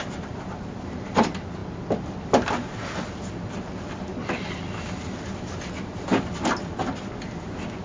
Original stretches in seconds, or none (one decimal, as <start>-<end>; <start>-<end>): 0.0-7.8